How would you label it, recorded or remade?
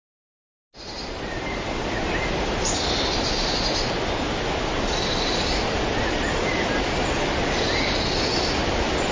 recorded